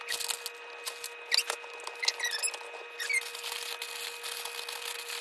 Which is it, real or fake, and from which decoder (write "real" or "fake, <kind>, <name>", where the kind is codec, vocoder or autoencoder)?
real